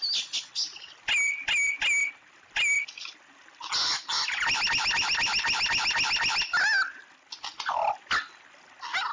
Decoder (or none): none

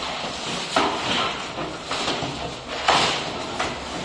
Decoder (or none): none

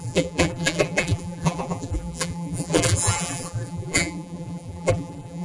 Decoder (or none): vocoder, BigVGAN v2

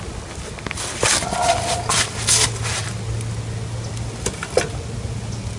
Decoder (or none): none